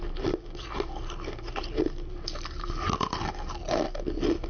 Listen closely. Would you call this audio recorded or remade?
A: recorded